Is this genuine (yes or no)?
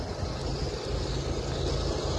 yes